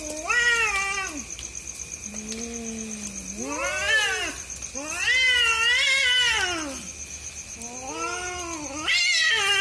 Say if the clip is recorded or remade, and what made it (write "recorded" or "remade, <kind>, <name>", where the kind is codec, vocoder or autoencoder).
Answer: recorded